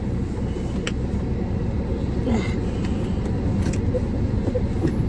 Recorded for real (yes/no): yes